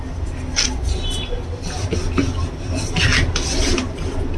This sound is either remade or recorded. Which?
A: recorded